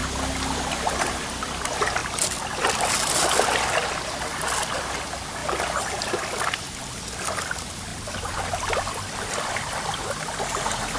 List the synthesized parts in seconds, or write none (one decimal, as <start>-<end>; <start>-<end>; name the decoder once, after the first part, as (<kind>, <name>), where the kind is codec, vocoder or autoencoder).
none